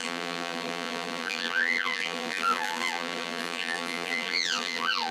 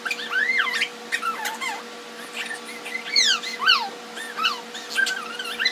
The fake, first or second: first